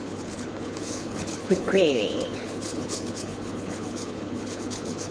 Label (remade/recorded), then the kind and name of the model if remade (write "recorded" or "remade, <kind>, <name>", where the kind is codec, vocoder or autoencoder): remade, codec, HILCodec